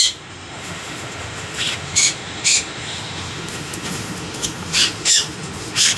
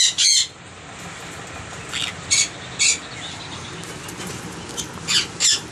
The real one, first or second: second